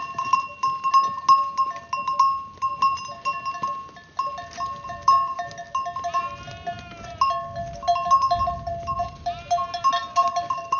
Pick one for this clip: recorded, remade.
recorded